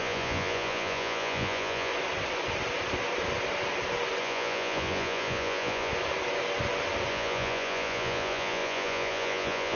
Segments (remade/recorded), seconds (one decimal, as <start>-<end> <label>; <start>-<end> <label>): 0.0-1.9 remade; 1.9-4.2 recorded; 4.2-5.9 remade; 5.9-7.1 recorded; 7.1-9.8 remade